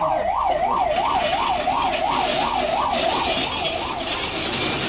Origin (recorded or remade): recorded